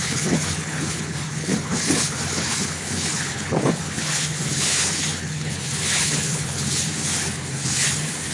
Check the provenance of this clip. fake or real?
fake